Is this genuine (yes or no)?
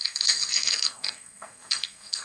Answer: no